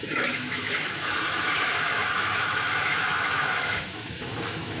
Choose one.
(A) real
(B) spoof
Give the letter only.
B